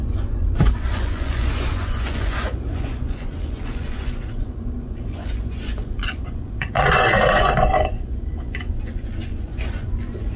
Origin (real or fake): fake